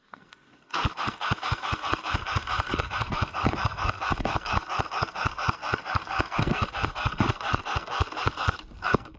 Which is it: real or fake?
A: fake